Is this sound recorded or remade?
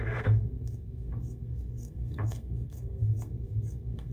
remade